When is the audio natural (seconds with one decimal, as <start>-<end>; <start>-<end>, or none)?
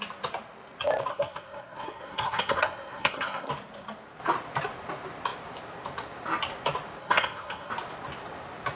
0.0-1.1; 3.5-7.0; 7.7-8.8